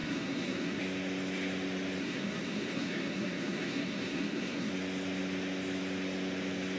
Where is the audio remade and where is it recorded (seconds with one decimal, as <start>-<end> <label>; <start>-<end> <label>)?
0.0-0.8 remade; 0.8-2.0 recorded; 2.0-4.7 remade; 4.7-6.8 recorded